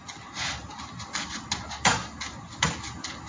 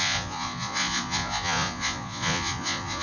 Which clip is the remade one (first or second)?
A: second